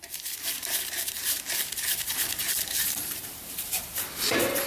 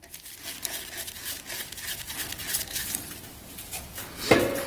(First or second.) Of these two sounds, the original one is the second